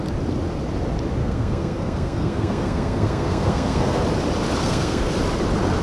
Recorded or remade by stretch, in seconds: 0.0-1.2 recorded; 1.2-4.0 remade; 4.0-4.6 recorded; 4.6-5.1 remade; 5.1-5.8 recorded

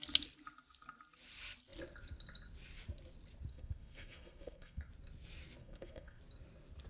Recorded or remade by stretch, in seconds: 0.0-3.5 recorded; 3.5-4.9 remade; 4.9-5.6 recorded; 5.6-6.2 remade; 6.2-6.9 recorded

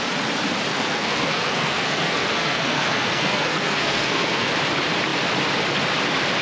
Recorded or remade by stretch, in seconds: 0.0-0.7 recorded; 0.7-4.5 remade; 4.5-6.4 recorded

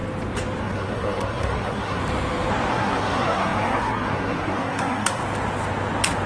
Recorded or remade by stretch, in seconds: 0.0-0.6 recorded; 0.6-2.0 remade; 2.0-2.7 recorded; 2.7-5.2 remade; 5.2-6.3 recorded

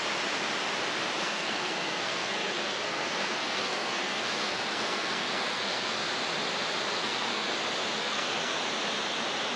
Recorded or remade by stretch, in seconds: 0.0-1.2 recorded; 1.2-6.1 remade; 6.1-7.0 recorded; 7.0-7.5 remade; 7.5-8.0 recorded; 8.0-8.6 remade; 8.6-9.6 recorded

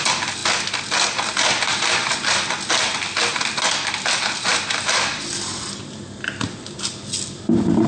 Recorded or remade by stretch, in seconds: 0.0-7.9 recorded